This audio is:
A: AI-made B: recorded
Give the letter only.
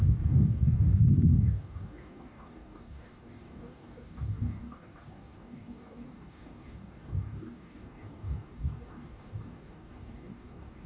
A